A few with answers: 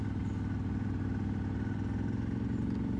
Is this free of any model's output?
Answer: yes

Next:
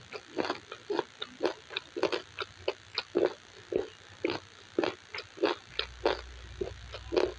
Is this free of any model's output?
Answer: yes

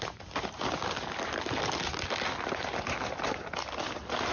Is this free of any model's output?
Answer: yes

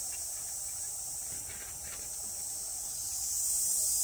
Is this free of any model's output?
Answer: yes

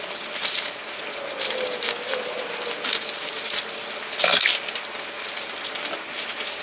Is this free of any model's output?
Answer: yes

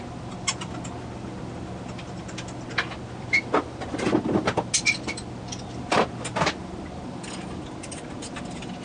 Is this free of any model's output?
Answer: yes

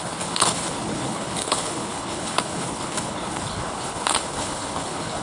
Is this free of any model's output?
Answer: no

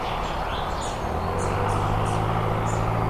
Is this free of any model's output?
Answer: yes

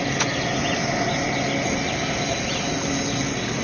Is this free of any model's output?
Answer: yes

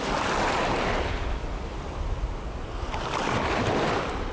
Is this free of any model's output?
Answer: yes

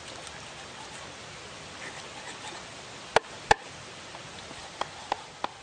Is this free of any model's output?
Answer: yes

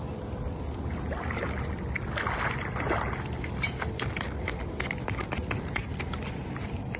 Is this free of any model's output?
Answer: yes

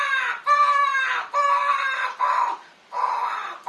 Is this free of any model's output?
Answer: no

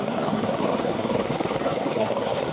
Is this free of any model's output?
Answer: no